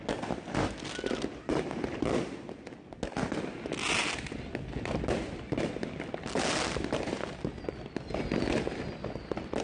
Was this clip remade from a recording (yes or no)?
no